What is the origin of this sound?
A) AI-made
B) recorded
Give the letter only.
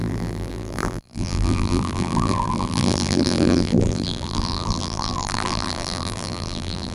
A